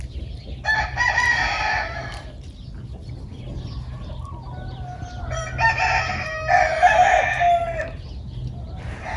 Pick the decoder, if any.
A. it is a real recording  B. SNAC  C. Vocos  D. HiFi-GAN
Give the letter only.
A